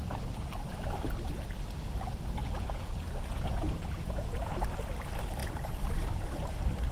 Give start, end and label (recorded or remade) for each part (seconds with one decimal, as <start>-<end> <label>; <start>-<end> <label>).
0.0-2.4 recorded; 2.4-4.6 remade; 4.6-6.9 recorded